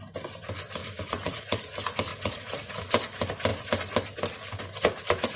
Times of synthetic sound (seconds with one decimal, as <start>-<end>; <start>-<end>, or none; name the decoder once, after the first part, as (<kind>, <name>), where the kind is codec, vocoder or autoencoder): 0.8-1.6 (vocoder, Vocos); 2.1-2.7